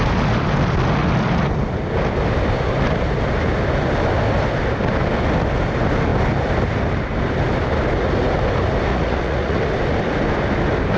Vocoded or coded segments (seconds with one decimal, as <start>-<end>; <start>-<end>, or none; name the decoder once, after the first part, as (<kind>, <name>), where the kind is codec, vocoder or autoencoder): 8.9-9.6 (vocoder, Vocos)